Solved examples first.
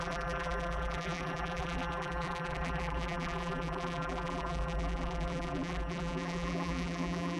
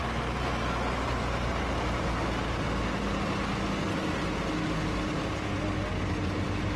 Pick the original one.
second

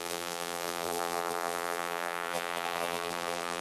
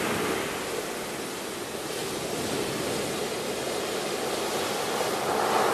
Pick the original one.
second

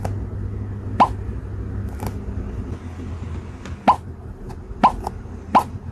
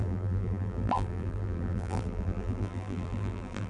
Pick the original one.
first